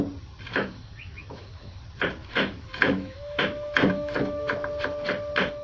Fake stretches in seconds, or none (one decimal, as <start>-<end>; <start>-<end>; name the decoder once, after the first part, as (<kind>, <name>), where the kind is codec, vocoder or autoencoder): 0.5-1.8 (autoencoder, DAC-VAE); 2.2-4.5